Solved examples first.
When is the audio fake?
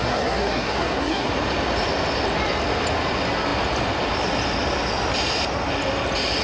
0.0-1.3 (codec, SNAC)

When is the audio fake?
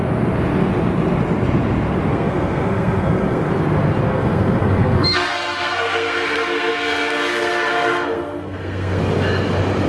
2.1-3.5 (codec, SNAC); 4.1-9.0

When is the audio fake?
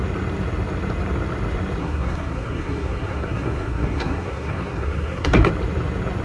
1.8-5.5 (codec, SNAC)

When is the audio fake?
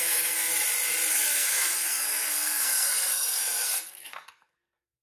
0.0-0.5 (codec, SNAC); 1.1-5.0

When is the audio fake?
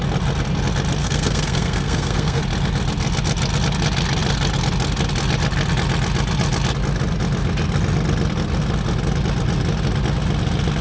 1.0-2.4 (codec, SNAC)